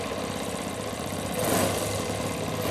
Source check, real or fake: real